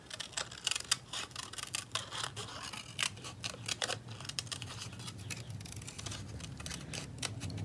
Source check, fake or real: real